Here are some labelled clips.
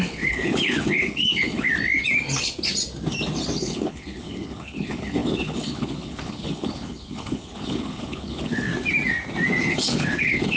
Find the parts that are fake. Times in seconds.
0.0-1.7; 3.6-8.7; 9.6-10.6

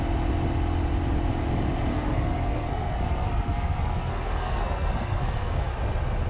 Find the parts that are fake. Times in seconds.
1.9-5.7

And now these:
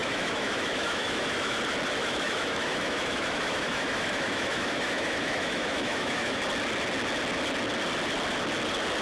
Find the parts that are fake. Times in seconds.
0.0-1.6; 2.0-6.4